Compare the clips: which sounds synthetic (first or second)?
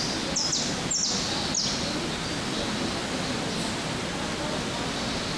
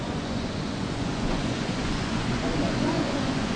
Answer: second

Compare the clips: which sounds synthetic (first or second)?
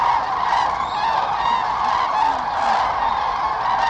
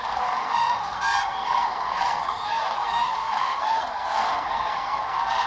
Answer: second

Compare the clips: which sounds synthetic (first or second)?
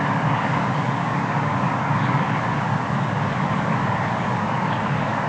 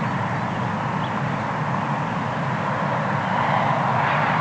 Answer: first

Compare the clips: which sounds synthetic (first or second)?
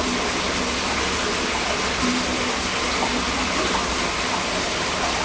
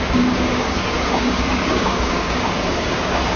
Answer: second